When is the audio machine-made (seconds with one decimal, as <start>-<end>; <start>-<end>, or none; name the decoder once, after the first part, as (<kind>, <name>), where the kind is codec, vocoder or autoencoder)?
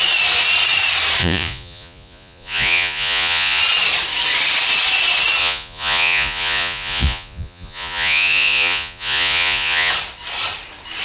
1.2-3.6 (vocoder, Vocos); 5.4-9.9